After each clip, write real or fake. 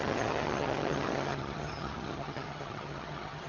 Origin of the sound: fake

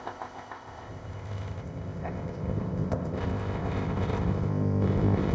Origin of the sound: fake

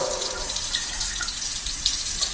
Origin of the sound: fake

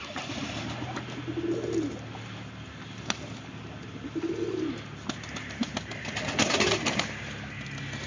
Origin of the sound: real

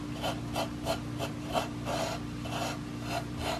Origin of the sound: real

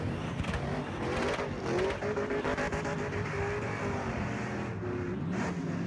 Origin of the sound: real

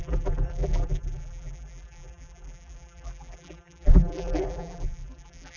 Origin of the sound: fake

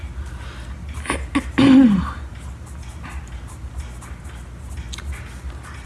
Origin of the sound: real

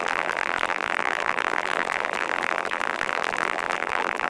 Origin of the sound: fake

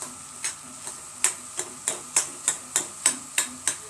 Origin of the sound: real